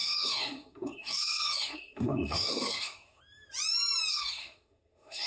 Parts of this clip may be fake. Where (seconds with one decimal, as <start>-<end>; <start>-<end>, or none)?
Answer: 0.0-3.2; 4.1-5.3